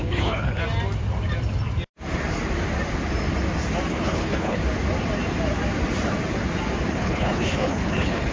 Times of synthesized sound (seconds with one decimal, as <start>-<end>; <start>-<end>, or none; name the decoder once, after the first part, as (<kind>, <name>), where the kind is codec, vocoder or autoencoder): 0.0-0.6 (codec, HILCodec); 3.9-4.6; 6.9-8.3